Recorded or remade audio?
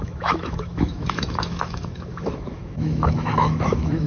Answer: remade